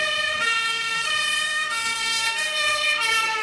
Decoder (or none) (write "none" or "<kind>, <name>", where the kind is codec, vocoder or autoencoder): codec, SNAC